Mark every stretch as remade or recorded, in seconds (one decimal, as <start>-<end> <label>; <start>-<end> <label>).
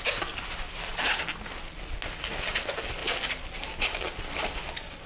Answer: 0.0-5.1 recorded